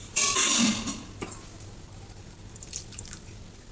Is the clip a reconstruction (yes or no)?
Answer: yes